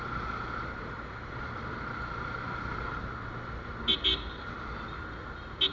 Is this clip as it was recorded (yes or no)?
yes